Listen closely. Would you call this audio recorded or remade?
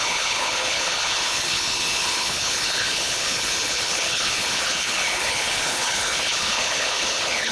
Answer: remade